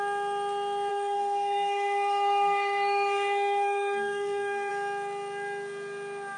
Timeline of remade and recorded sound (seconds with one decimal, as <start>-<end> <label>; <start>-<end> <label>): 0.0-0.9 recorded; 0.9-4.7 remade; 4.7-6.4 recorded